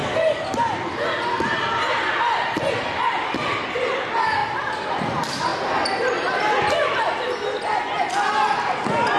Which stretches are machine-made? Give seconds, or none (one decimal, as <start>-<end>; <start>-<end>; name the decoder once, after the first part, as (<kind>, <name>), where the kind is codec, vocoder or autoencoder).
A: 4.4-4.9 (vocoder, BigVGAN v2)